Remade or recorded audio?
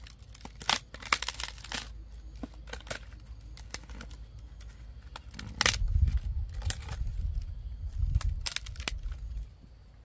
recorded